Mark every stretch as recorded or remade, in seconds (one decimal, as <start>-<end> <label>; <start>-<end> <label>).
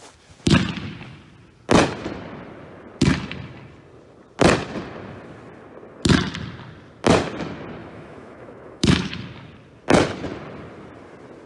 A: 0.0-7.8 recorded; 7.8-9.2 remade; 9.2-11.5 recorded